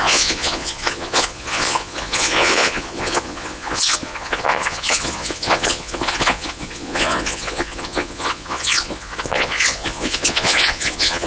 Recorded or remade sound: remade